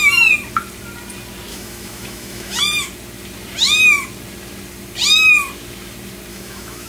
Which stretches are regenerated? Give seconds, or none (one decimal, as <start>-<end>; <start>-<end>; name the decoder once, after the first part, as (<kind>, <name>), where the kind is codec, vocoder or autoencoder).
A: 1.5-2.6 (autoencoder, DAC-VAE); 6.3-6.9